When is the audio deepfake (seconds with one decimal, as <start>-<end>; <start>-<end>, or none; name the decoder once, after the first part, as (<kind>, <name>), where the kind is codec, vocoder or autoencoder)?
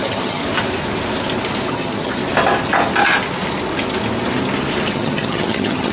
0.0-0.4 (vocoder, HiFi-GAN); 1.7-2.2; 4.9-5.9